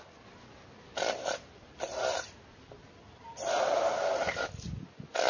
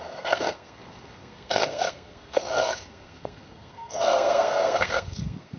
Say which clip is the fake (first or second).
second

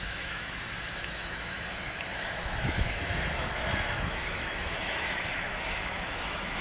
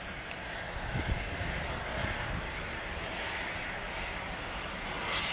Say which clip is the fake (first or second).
first